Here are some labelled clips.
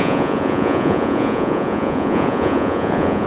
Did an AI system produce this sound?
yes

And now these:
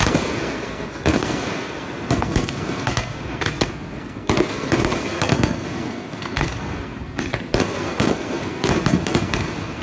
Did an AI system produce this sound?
yes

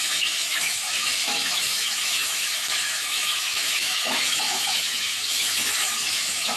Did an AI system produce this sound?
yes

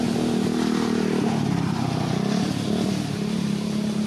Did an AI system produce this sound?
no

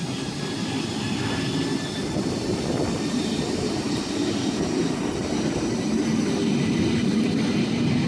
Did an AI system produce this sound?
no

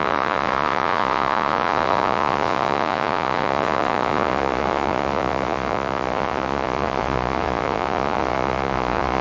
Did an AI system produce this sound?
yes